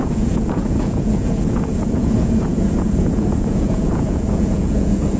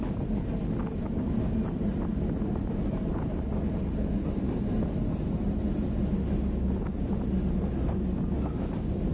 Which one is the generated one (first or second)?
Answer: first